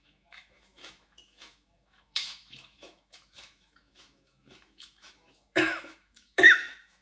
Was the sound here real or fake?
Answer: fake